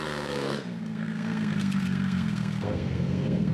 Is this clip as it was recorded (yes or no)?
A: no